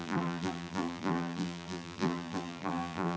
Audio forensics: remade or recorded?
remade